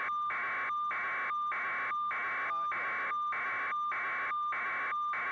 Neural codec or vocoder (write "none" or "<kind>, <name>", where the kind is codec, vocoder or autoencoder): none